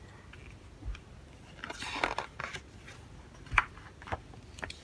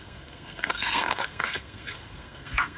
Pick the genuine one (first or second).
first